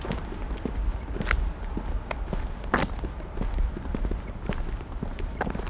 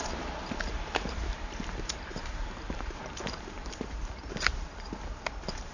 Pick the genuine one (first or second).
first